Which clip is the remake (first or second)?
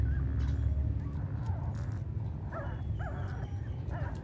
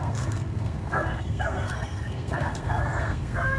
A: second